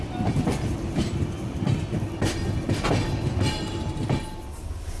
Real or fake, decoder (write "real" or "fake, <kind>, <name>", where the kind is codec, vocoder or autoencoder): real